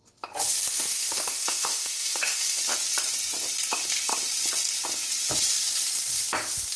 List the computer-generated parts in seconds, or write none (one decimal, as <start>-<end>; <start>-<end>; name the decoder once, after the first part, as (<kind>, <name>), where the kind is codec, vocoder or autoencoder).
0.7-2.6 (autoencoder, DAC-VAE)